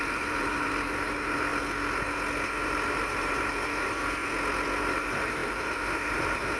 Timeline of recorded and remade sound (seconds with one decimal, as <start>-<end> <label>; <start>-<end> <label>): 0.0-1.5 remade; 1.5-2.5 recorded; 2.5-4.2 remade; 4.2-4.9 recorded; 4.9-6.6 remade